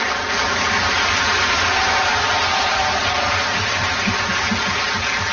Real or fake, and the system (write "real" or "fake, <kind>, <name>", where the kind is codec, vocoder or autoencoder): real